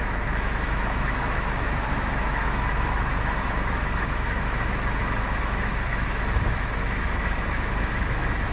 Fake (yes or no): yes